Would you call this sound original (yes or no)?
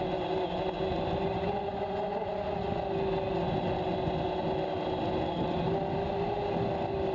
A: yes